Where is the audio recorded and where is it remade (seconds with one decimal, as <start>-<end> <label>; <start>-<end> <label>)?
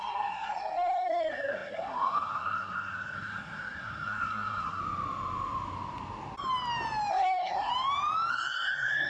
0.0-4.8 remade; 4.8-7.1 recorded; 7.1-7.7 remade; 7.7-8.3 recorded; 8.3-9.1 remade